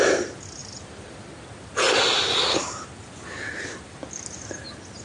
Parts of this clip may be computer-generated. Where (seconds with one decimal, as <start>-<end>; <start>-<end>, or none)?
none